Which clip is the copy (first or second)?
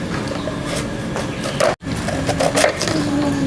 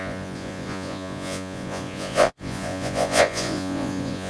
second